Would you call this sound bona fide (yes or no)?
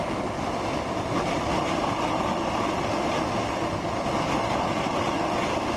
yes